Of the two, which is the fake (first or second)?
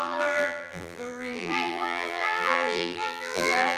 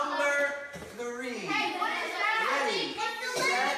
first